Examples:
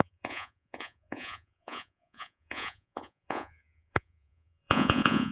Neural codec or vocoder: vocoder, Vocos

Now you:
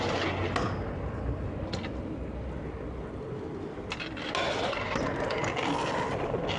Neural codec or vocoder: none